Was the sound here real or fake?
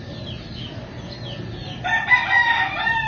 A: real